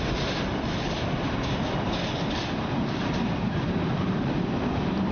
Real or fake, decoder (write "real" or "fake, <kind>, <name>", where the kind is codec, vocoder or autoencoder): fake, vocoder, BigVGAN v2